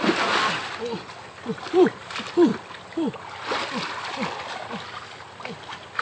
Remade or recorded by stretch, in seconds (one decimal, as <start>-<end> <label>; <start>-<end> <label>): 0.0-6.0 recorded